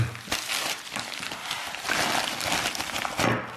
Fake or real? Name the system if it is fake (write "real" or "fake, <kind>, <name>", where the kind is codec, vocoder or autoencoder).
real